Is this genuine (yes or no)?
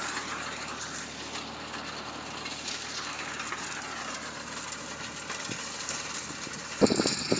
yes